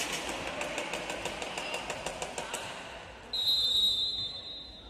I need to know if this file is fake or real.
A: real